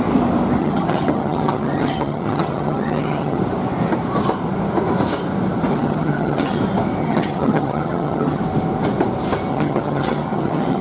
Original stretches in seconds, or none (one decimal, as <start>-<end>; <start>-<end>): 0.0-0.6; 3.4-5.7; 6.6-7.0; 8.4-9.5

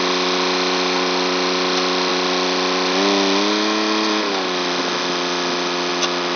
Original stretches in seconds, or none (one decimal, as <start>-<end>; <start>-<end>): 0.0-6.4